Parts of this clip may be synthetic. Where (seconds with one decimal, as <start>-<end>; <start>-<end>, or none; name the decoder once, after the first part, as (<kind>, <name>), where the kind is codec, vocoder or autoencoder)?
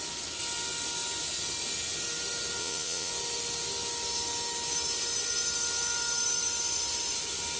2.6-3.1 (vocoder, Vocos)